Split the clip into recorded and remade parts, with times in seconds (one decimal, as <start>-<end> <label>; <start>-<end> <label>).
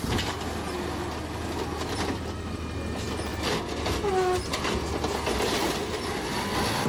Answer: 0.0-6.9 recorded